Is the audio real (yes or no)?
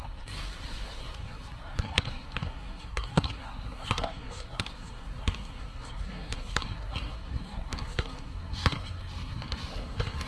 no